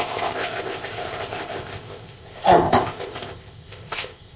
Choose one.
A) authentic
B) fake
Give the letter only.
B